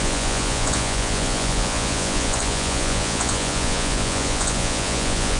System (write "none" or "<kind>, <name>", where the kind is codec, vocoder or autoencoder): vocoder, Vocos